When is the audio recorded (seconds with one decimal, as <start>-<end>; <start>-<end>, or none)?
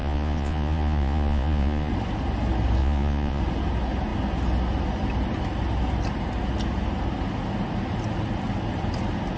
1.9-2.8; 3.4-9.4